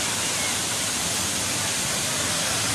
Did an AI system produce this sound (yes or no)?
no